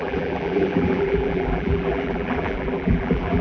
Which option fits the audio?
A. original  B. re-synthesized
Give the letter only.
B